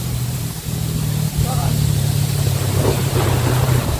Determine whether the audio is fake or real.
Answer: fake